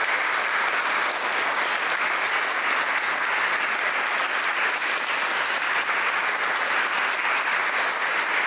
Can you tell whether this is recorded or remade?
recorded